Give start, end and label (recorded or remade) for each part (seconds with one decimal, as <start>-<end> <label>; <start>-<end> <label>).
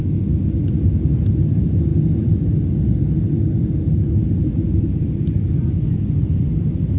0.0-7.0 recorded